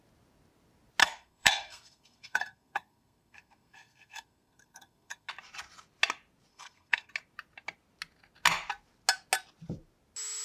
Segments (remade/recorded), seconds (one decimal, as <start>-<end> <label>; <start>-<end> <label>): 0.0-1.0 recorded; 1.0-5.3 remade; 5.3-6.5 recorded; 6.5-7.1 remade; 7.1-10.4 recorded